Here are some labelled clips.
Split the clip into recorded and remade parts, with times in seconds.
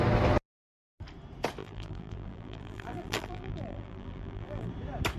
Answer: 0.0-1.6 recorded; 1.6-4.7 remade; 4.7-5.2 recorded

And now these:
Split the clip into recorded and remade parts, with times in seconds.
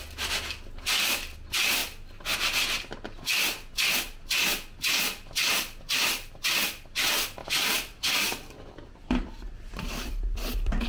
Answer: 0.0-7.4 recorded; 7.4-10.9 remade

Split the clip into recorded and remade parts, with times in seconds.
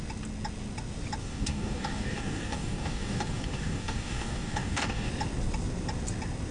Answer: 0.0-1.2 recorded; 1.2-5.1 remade; 5.1-6.5 recorded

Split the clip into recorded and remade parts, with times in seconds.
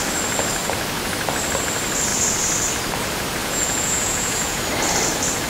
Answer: 0.0-3.4 recorded; 3.4-4.6 remade; 4.6-5.5 recorded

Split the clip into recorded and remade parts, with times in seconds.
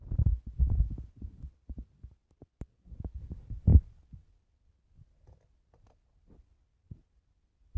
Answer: 0.0-7.8 recorded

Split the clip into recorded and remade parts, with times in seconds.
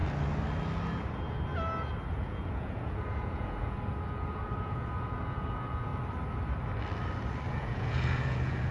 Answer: 0.0-2.1 recorded; 2.1-5.9 remade; 5.9-7.5 recorded; 7.5-8.7 remade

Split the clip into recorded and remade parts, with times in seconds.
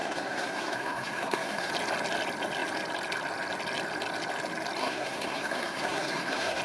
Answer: 0.0-1.7 remade; 1.7-4.8 recorded; 4.8-6.6 remade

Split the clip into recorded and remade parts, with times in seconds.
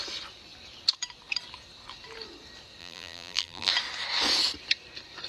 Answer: 0.0-2.8 recorded; 2.8-3.7 remade; 3.7-5.3 recorded